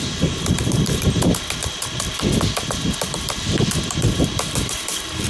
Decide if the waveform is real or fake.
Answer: fake